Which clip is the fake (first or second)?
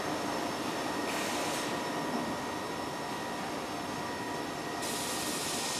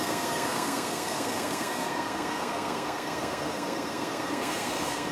second